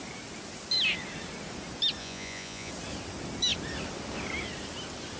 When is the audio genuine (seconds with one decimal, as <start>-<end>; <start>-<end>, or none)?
0.0-2.0; 2.7-5.2